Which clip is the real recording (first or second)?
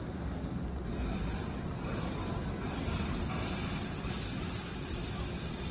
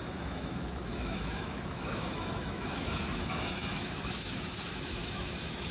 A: first